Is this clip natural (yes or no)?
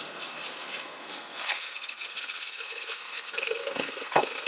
no